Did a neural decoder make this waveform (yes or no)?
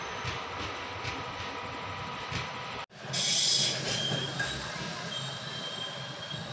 no